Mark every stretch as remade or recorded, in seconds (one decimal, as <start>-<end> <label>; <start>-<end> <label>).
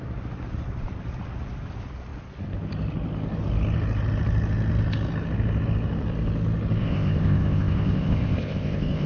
0.0-6.8 recorded; 6.8-9.1 remade